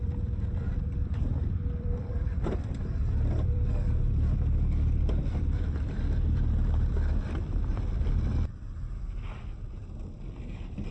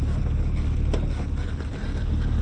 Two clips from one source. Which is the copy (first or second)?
first